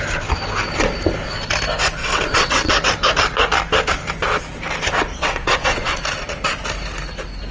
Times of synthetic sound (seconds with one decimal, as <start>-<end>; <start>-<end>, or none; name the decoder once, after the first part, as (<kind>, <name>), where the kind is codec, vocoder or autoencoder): 2.0-2.7 (vocoder, WaveNeXt); 5.1-6.0